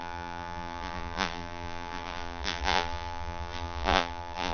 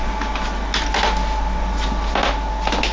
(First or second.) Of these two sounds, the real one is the second